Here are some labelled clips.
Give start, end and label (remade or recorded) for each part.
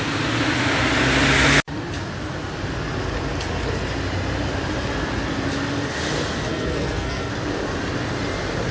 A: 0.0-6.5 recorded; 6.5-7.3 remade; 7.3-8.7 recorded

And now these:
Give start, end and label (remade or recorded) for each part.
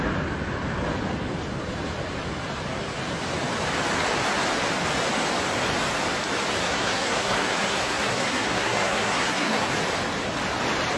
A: 0.0-6.6 recorded; 6.6-9.6 remade; 9.6-11.0 recorded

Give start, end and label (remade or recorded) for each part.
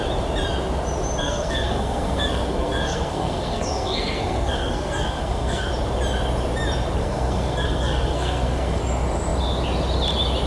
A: 0.0-1.2 recorded; 1.2-5.7 remade; 5.7-7.0 recorded; 7.0-8.8 remade; 8.8-10.5 recorded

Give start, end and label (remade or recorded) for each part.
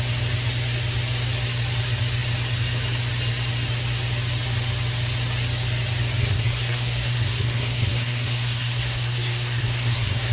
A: 0.0-6.2 recorded; 6.2-10.3 remade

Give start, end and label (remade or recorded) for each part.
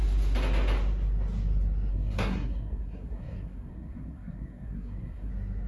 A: 0.0-1.9 recorded; 1.9-5.3 remade; 5.3-5.7 recorded